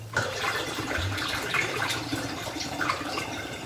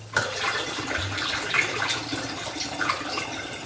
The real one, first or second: second